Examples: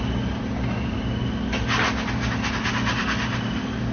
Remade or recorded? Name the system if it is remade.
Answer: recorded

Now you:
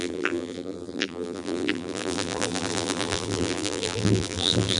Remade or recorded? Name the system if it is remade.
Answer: remade, vocoder, BigVGAN v2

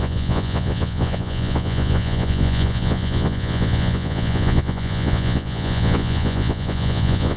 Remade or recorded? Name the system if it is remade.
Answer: remade, vocoder, Vocos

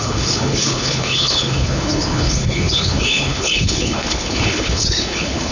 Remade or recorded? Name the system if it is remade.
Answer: remade, codec, HILCodec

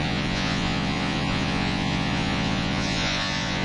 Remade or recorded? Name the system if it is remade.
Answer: remade, vocoder, Vocos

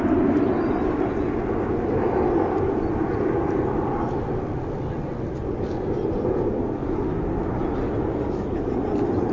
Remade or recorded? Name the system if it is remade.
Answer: recorded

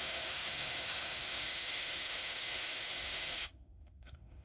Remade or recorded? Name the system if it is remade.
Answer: remade, autoencoder, DAC-VAE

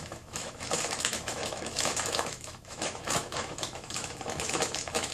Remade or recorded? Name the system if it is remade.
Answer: remade, autoencoder, DAC-VAE